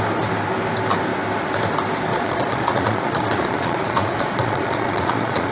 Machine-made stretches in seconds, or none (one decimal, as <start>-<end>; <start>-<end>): 2.1-5.5

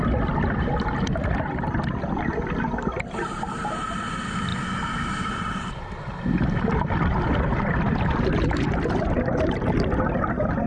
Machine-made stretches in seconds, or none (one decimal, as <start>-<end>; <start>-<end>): 4.5-6.2

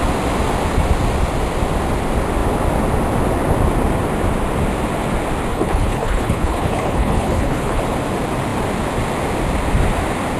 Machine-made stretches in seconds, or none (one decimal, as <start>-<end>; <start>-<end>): 5.5-7.8